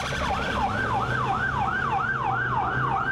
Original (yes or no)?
yes